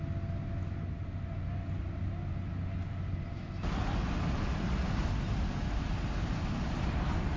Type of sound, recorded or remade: recorded